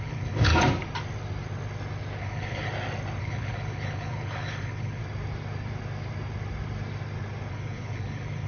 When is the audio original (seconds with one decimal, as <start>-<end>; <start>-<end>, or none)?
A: 0.5-2.2; 2.7-3.2; 5.0-7.5